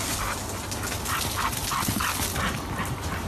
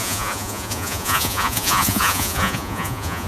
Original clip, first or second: first